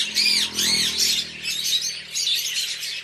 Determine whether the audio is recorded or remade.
recorded